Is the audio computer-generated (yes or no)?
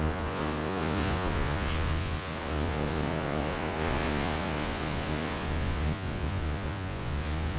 yes